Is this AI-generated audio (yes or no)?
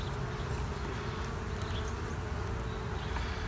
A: no